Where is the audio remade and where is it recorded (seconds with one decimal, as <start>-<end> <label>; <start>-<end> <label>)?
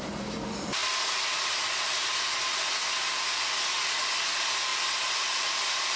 0.0-6.0 recorded